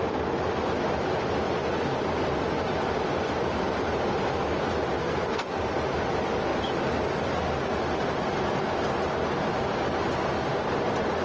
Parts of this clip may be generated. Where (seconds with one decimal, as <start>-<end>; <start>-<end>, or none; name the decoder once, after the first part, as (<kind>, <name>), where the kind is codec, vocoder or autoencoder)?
5.0-5.5 (codec, SNAC)